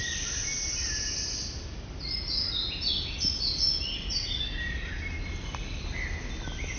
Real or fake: real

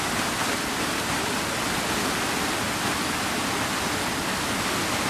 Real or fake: real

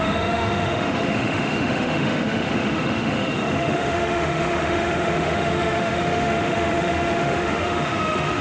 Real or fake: fake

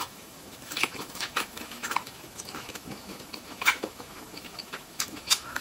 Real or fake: fake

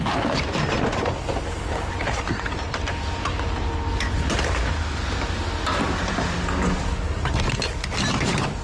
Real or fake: real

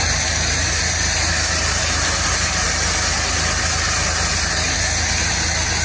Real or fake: real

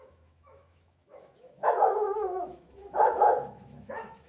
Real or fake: fake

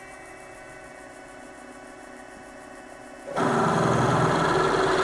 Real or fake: real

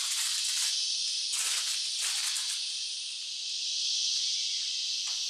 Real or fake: real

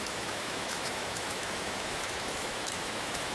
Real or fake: fake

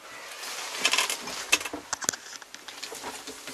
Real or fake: real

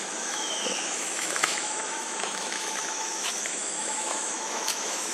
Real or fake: fake